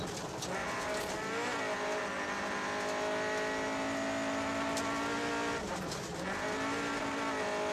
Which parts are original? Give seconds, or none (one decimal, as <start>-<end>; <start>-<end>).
0.0-7.7